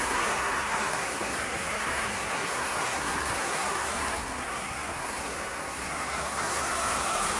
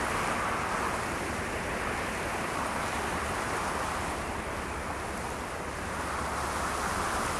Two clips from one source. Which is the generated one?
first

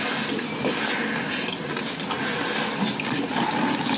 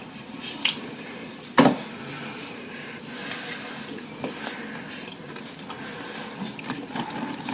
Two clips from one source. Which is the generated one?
second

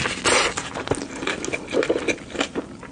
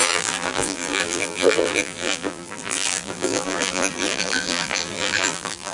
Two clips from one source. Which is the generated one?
second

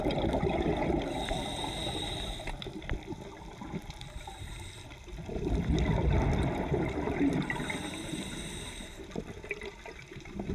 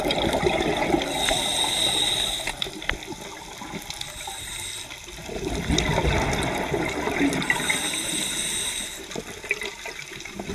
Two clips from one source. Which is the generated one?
first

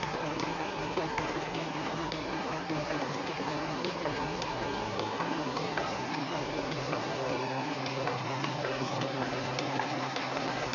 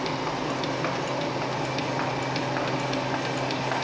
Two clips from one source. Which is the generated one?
first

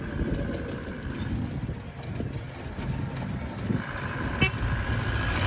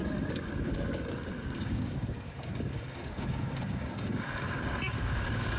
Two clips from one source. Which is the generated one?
second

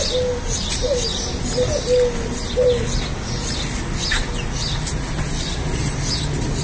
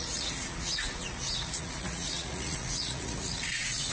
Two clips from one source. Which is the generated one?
second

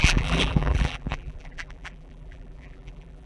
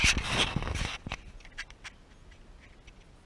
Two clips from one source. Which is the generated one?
first